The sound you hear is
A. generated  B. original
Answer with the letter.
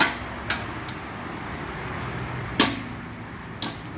B